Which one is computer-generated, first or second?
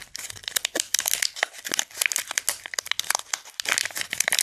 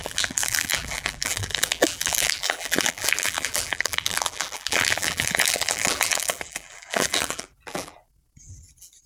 second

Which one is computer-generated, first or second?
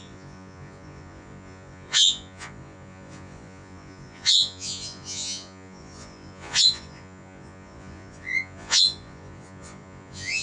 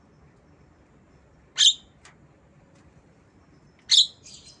first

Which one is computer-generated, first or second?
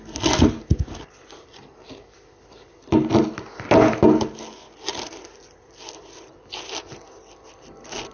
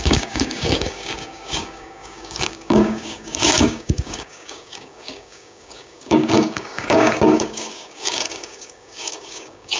second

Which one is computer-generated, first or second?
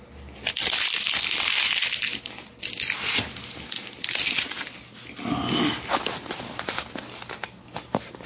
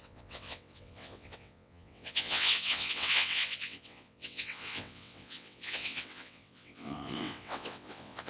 second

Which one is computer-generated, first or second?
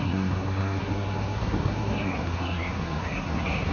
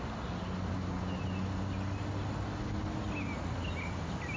first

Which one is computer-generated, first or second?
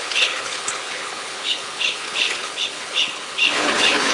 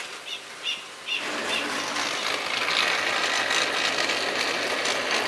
first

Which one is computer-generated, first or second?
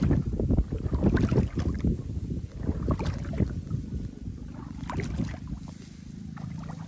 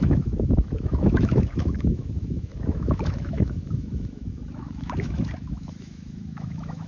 second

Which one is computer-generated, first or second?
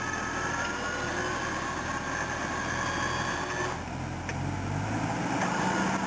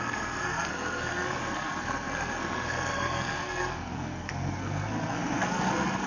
second